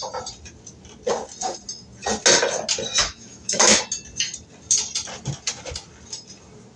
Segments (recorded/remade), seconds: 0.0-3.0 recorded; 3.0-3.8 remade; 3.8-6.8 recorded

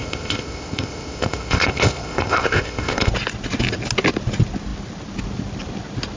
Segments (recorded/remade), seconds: 0.0-3.1 remade; 3.1-6.2 recorded

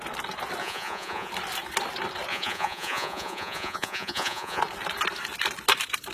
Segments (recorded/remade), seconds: 0.0-0.6 recorded; 0.6-1.3 remade; 1.3-2.3 recorded; 2.3-4.6 remade; 4.6-6.1 recorded